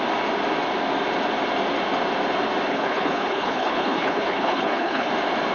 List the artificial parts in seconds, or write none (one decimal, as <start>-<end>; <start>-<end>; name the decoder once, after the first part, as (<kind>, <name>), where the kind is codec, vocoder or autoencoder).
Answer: 2.7-5.1 (codec, HILCodec)

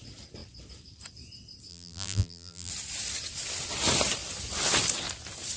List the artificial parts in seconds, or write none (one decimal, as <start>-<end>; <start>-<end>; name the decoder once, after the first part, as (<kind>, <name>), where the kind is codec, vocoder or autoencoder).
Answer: 1.7-2.7 (vocoder, BigVGAN v2)

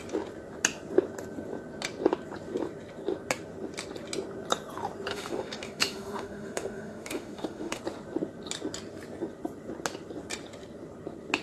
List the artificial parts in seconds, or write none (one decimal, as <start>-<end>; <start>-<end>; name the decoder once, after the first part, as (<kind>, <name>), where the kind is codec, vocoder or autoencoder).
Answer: 5.1-7.8 (autoencoder, DAC-VAE)

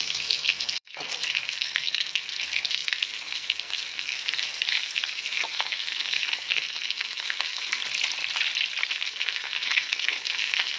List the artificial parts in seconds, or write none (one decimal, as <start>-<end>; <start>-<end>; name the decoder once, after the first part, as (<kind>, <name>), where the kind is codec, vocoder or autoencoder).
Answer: 0.0-7.8 (codec, SNAC); 8.9-10.8

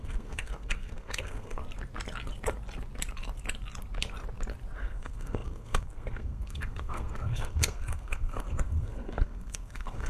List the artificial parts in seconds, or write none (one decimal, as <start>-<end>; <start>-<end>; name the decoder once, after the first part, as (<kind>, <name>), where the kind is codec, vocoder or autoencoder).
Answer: 0.0-1.6 (codec, SNAC); 4.8-10.1

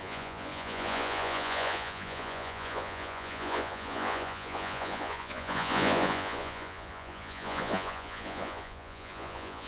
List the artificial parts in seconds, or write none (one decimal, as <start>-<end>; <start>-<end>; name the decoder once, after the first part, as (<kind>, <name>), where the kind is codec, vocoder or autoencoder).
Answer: 0.0-9.7 (vocoder, Vocos)

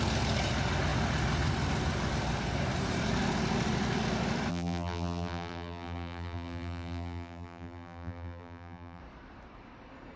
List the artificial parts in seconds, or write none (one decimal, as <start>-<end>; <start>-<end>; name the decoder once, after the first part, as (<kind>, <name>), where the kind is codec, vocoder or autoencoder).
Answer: 4.5-9.0 (vocoder, BigVGAN v2)

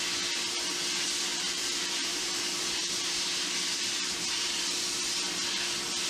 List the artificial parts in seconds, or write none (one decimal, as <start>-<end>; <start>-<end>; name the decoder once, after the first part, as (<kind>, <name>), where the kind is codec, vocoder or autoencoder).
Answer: 1.3-5.0 (vocoder, BigVGAN v2)